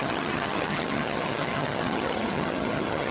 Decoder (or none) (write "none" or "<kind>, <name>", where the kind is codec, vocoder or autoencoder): vocoder, HiFi-GAN